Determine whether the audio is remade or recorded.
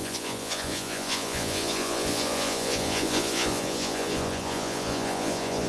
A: remade